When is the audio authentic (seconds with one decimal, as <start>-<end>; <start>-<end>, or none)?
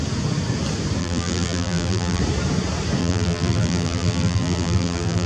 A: 0.0-1.0; 2.2-3.0